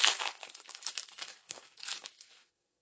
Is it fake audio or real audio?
fake